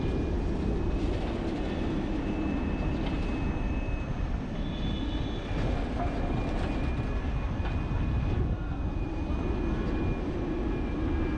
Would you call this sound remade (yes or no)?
no